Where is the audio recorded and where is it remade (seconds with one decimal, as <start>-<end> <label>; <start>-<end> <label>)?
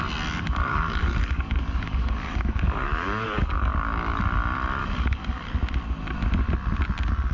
0.0-0.7 recorded; 0.7-4.2 remade; 4.2-4.8 recorded; 4.8-5.5 remade; 5.5-7.3 recorded